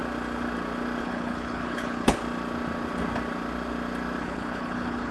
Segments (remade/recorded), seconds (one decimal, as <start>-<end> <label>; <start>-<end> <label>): 0.0-1.0 recorded; 1.0-2.2 remade; 2.2-4.2 recorded; 4.2-5.1 remade